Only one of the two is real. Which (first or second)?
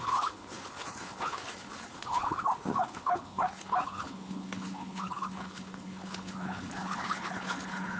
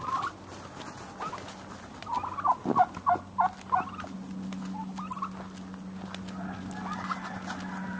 second